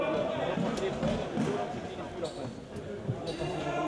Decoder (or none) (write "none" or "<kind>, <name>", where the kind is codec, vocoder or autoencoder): none